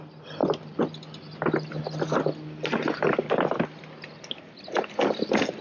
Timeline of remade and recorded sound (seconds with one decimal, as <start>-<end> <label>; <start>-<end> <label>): 0.0-5.6 recorded

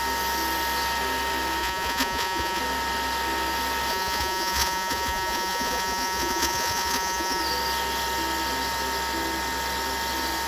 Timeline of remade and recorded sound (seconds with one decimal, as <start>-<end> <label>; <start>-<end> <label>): 0.0-1.6 recorded; 1.6-2.6 remade; 2.6-3.9 recorded; 3.9-7.4 remade; 7.4-10.5 recorded

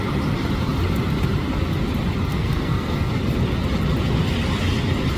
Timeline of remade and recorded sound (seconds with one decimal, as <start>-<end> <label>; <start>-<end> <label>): 0.0-2.3 recorded; 2.3-3.1 remade; 3.1-5.2 recorded